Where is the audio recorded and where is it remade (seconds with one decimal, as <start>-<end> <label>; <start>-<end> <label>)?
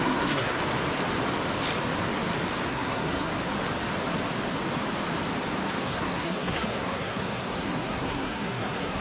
0.0-0.6 remade; 0.6-2.7 recorded; 2.7-3.3 remade; 3.3-5.8 recorded; 5.8-9.0 remade